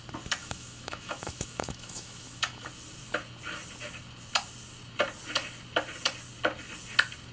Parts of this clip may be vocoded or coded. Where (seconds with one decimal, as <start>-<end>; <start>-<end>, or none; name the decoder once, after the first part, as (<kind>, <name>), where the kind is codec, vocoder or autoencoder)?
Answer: 0.4-2.7 (autoencoder, DAC-VAE)

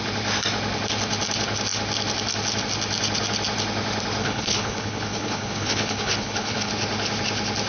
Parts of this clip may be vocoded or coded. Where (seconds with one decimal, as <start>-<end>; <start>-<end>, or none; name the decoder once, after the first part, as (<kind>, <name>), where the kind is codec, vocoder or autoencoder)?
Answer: 4.2-6.7 (codec, HILCodec)